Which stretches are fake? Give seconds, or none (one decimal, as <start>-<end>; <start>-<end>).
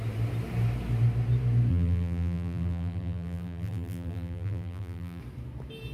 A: 1.7-5.2